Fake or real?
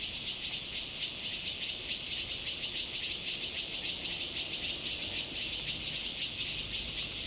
real